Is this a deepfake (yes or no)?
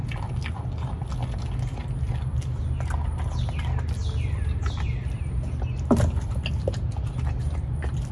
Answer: no